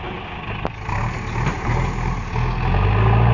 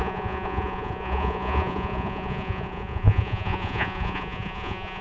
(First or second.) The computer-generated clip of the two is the second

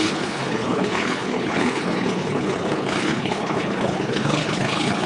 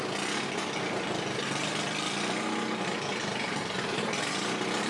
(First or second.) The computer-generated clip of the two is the first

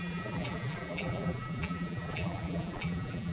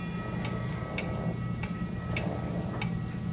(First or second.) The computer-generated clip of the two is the first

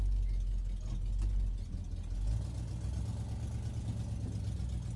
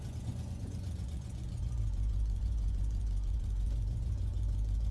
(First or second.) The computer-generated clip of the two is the second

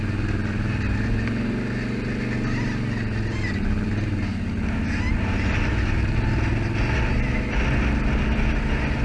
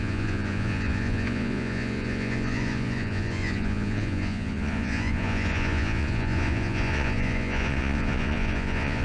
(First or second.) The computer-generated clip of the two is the second